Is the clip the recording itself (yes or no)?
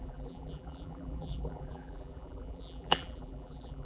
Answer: no